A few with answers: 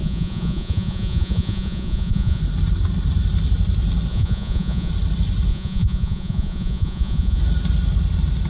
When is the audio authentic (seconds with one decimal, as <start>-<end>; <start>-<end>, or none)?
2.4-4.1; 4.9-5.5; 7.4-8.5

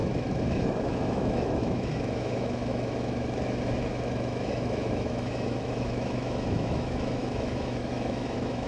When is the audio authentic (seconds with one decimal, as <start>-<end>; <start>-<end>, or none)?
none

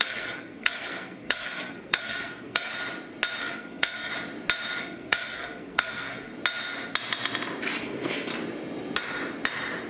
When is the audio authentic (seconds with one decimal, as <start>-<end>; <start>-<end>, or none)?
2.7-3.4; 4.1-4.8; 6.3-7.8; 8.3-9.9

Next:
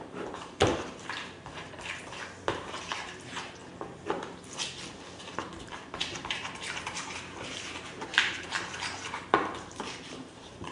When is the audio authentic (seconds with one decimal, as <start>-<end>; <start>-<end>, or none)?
3.6-5.2